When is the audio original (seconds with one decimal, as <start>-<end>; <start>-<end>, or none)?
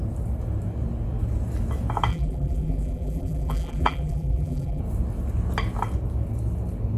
0.0-2.1; 4.8-7.0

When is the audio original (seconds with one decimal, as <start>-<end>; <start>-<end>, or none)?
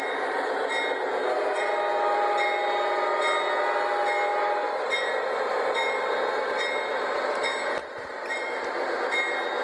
0.0-1.2; 1.7-4.3; 4.9-7.8; 8.9-9.6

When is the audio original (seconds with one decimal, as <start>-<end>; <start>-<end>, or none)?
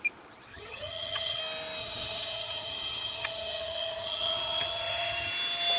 0.0-0.5; 1.4-1.8; 5.3-5.8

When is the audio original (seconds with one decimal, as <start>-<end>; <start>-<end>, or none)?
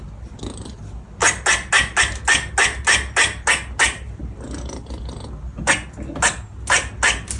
0.0-7.4